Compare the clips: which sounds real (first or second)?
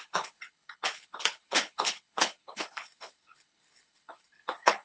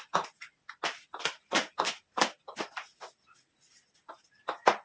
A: second